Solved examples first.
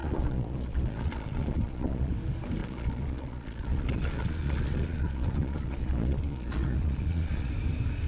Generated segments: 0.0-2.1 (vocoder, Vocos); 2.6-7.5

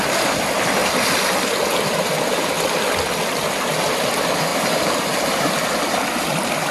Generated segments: 4.5-5.5 (vocoder, BigVGAN v2)

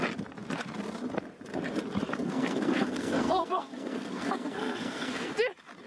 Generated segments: 2.2-5.3 (codec, SNAC)

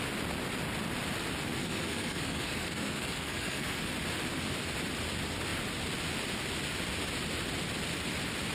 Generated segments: 1.6-3.9 (codec, SNAC)